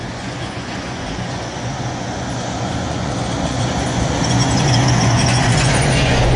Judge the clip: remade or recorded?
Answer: remade